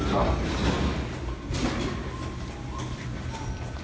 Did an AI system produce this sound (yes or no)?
no